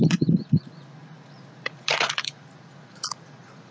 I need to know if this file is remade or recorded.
remade